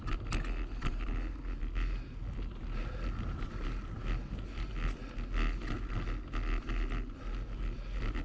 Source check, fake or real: real